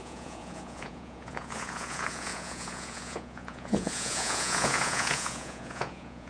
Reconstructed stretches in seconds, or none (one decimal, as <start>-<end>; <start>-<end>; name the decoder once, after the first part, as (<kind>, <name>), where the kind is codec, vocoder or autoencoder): 0.0-6.3 (vocoder, Vocos)